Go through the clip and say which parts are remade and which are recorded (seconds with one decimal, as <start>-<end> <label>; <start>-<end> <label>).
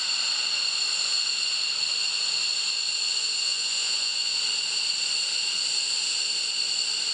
0.0-3.4 recorded; 3.4-4.4 remade; 4.4-7.1 recorded